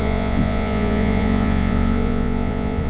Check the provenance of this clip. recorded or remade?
remade